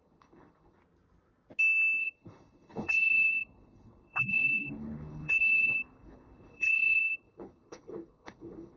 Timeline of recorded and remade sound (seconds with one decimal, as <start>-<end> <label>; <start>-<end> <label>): 0.0-0.8 remade; 0.8-2.0 recorded; 2.0-8.8 remade